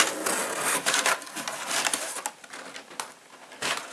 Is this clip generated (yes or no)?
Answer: no